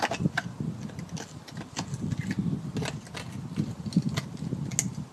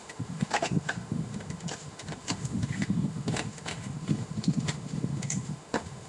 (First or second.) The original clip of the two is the first